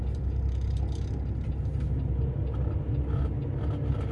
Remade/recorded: recorded